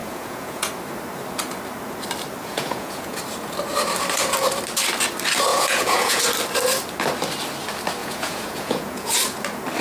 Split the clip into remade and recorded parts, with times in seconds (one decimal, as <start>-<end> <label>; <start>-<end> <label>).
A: 0.0-0.7 remade; 0.7-2.4 recorded; 2.4-3.2 remade; 3.2-5.5 recorded; 5.5-6.2 remade; 6.2-8.0 recorded; 8.0-9.1 remade; 9.1-9.8 recorded